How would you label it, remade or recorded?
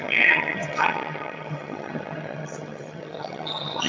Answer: remade